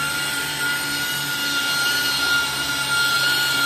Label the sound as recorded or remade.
recorded